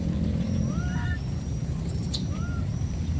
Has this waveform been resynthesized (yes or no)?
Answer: yes